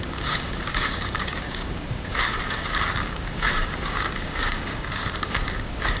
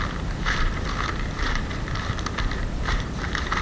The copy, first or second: first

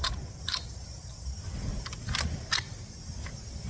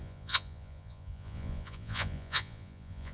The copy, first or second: second